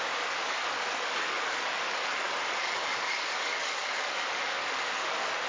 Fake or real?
fake